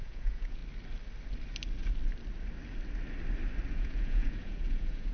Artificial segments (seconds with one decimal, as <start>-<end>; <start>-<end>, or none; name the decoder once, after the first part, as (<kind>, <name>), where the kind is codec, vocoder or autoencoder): 0.0-0.6 (vocoder, Vocos); 3.7-5.1